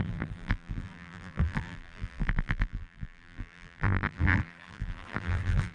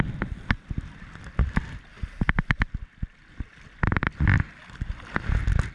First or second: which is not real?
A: first